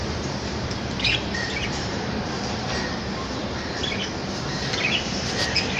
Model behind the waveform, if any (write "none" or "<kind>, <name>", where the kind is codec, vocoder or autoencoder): vocoder, BigVGAN v2